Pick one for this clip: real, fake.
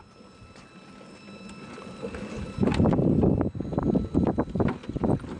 real